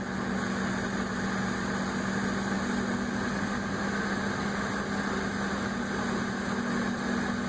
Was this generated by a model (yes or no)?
no